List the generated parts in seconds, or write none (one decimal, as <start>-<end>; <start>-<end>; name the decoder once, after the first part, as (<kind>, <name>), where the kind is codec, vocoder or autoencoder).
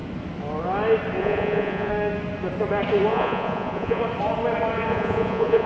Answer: 1.2-1.9 (vocoder, Vocos); 3.1-4.0; 4.9-5.7